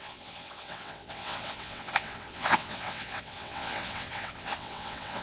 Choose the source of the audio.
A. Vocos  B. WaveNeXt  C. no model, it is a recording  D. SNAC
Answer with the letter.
B